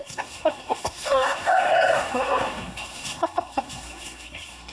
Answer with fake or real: fake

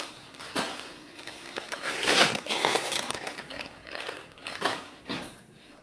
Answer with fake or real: fake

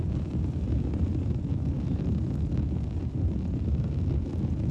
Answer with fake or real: real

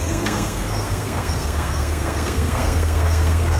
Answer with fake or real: fake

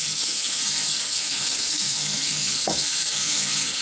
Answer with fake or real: fake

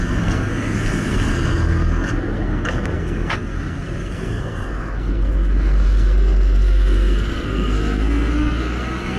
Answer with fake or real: fake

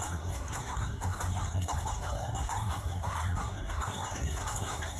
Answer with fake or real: fake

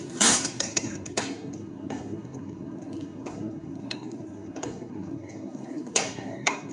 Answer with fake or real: fake